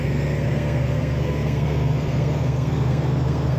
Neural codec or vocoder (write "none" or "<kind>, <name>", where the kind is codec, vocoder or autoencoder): codec, SNAC